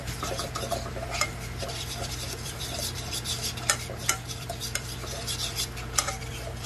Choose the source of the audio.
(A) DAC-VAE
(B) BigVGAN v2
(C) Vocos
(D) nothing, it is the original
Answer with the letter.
B